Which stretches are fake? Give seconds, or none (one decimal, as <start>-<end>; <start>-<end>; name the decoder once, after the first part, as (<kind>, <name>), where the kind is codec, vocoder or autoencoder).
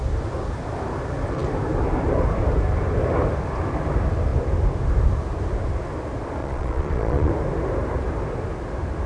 6.4-7.3 (vocoder, Vocos)